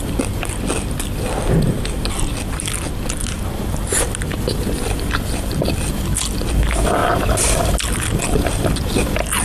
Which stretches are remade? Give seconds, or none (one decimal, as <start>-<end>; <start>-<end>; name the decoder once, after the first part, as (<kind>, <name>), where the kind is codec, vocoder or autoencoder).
none